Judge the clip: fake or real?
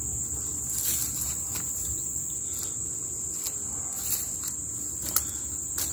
real